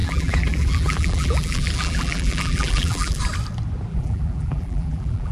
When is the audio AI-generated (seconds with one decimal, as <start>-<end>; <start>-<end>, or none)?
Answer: 0.0-3.2; 3.9-5.3